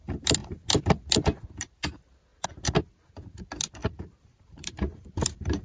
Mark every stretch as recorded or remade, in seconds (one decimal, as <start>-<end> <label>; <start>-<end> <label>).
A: 0.0-3.8 recorded; 3.8-5.6 remade